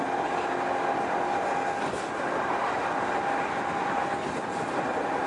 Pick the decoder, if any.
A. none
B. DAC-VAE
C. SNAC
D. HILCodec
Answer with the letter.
A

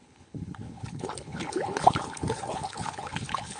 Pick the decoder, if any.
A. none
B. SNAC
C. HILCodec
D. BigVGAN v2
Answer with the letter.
C